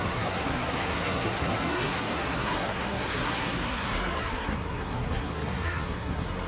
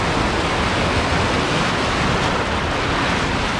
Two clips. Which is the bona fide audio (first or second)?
second